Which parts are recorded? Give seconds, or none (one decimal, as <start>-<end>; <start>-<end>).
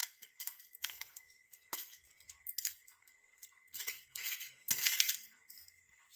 none